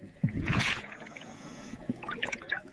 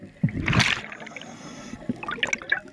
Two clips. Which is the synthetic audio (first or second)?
first